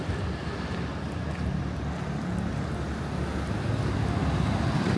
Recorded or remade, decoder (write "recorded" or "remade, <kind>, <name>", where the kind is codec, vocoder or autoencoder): recorded